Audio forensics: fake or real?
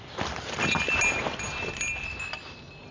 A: real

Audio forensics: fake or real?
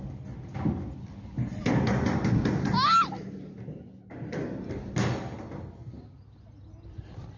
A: real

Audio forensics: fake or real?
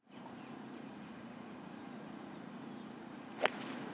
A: fake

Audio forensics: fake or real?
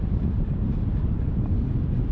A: real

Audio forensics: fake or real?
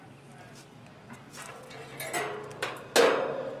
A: real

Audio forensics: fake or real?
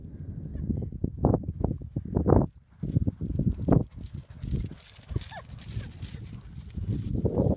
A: real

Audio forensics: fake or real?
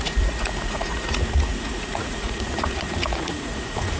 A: fake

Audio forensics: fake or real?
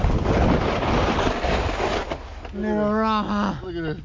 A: real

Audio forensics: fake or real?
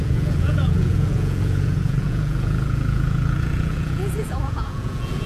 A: fake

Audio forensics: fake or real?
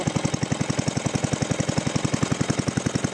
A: real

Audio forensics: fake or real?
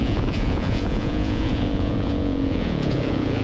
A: fake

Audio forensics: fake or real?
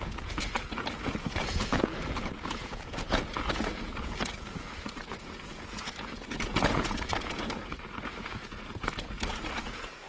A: fake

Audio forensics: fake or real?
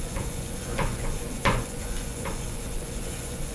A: fake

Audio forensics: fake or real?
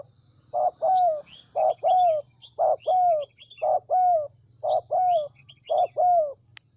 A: real